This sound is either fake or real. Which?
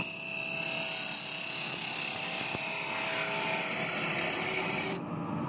real